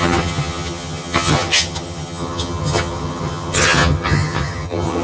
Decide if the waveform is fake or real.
fake